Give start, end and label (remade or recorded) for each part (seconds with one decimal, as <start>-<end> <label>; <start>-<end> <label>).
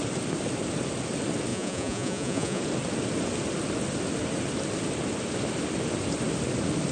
0.0-1.5 recorded; 1.5-2.6 remade; 2.6-6.9 recorded